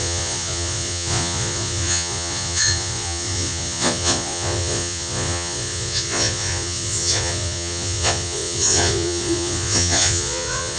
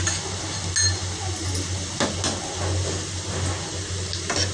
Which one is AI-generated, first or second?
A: first